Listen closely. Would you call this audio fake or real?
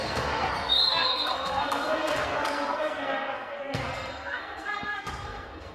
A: fake